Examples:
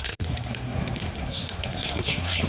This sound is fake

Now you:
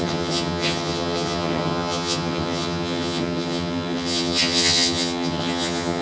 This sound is fake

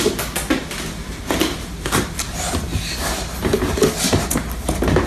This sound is real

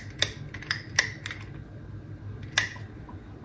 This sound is real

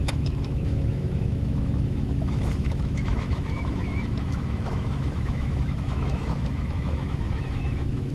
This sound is fake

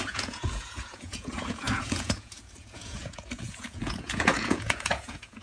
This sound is fake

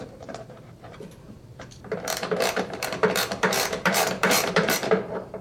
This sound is fake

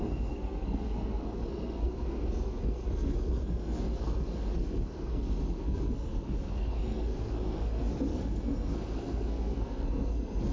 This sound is fake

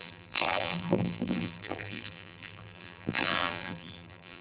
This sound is fake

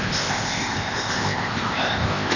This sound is fake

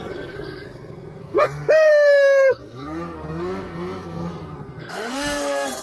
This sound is fake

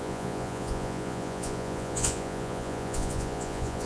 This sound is fake